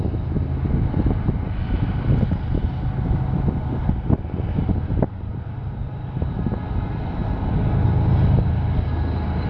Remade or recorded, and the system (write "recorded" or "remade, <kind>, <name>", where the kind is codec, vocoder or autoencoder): recorded